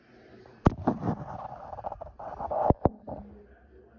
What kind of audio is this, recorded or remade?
recorded